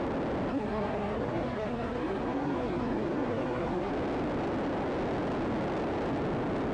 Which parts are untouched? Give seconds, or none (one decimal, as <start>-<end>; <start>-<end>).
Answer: 0.0-0.5; 3.9-6.7